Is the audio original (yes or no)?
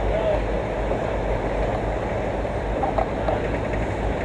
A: yes